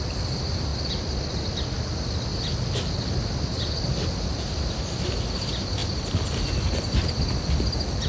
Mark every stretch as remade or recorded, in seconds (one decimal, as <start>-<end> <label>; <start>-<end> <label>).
0.0-8.1 recorded